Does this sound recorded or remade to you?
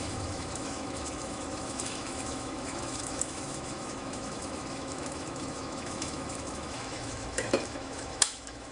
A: remade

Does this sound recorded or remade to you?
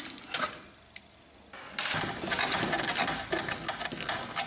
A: recorded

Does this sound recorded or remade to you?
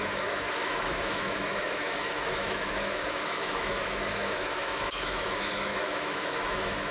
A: remade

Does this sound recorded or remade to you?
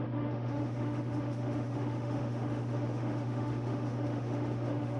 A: remade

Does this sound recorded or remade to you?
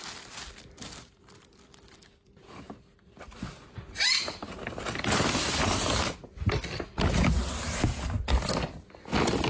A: recorded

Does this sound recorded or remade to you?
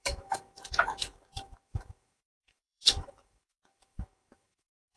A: remade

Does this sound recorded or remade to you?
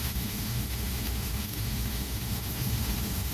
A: remade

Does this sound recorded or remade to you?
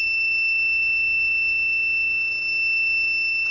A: remade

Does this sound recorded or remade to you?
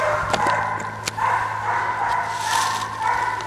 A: recorded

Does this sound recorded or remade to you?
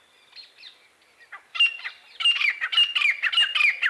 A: recorded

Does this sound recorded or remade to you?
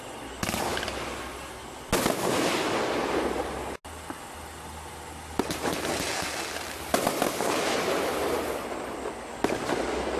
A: recorded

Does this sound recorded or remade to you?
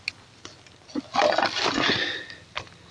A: recorded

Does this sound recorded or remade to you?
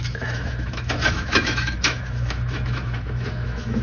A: remade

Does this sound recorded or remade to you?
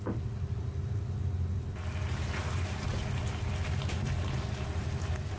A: recorded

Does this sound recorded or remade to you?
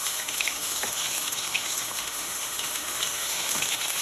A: remade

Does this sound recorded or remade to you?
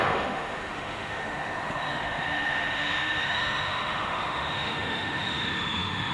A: remade